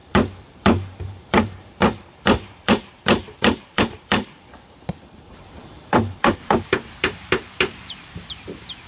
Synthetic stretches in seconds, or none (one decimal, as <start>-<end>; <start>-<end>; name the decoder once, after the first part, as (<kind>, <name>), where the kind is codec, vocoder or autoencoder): 0.0-8.9 (vocoder, BigVGAN v2)